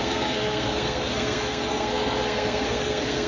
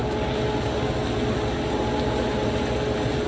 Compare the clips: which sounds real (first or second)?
second